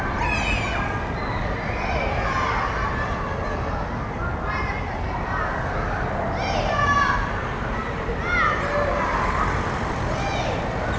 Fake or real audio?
real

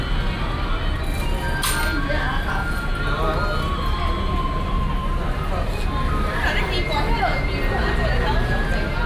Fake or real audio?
real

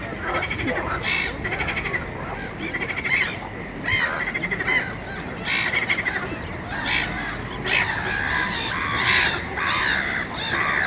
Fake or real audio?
real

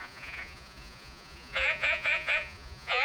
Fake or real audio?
fake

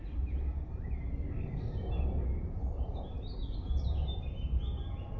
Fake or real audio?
fake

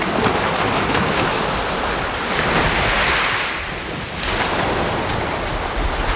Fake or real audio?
real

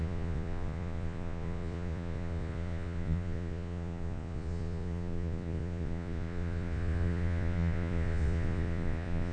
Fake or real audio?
fake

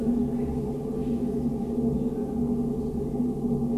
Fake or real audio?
real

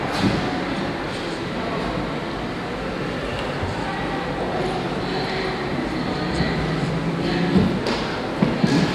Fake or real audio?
real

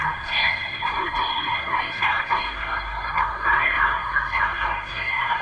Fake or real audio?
fake